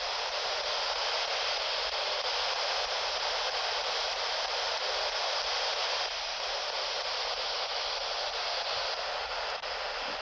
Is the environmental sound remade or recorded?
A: recorded